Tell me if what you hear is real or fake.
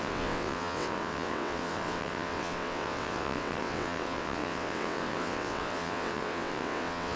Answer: fake